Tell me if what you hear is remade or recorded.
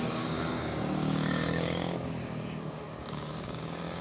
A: remade